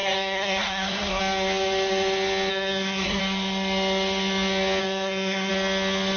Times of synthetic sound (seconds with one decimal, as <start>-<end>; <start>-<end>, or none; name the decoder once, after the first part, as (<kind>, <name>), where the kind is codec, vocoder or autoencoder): 0.0-1.2 (codec, SNAC); 2.5-3.2; 4.8-5.5